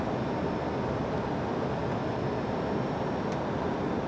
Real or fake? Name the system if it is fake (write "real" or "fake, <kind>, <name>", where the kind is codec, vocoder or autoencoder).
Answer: real